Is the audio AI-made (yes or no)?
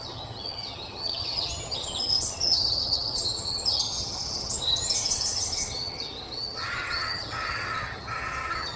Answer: yes